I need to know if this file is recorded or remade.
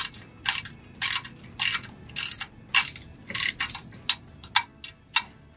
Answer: recorded